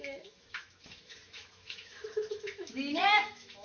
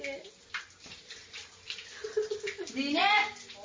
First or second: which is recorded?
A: second